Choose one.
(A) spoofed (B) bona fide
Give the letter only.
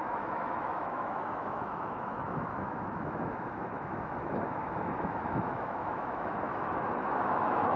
A